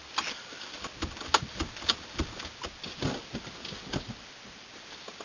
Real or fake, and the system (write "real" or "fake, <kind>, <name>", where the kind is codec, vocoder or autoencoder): real